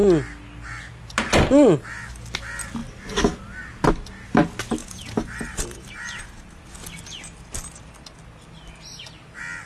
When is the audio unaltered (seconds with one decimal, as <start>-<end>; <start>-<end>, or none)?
0.0-4.8; 6.6-9.7